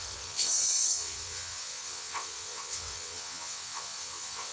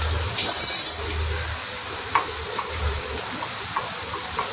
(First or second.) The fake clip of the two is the first